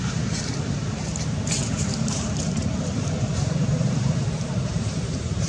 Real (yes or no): no